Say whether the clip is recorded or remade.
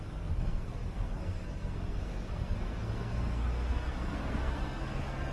remade